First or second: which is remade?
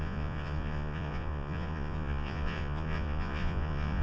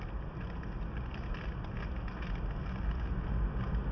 first